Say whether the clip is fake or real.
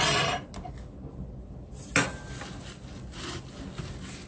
real